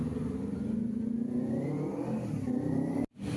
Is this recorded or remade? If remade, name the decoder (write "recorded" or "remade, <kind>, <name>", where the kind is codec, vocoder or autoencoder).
recorded